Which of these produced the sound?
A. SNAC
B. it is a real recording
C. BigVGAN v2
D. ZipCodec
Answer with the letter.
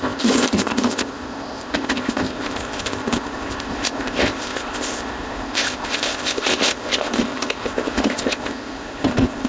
D